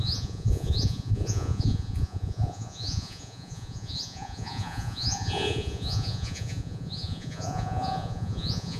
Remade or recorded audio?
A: remade